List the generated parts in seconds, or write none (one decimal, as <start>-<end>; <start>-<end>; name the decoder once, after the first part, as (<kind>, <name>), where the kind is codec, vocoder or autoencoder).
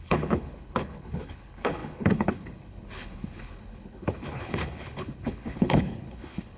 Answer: 0.0-6.6 (codec, HILCodec)